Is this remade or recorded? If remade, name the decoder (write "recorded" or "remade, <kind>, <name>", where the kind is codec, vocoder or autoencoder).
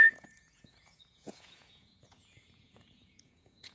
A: remade, vocoder, Vocos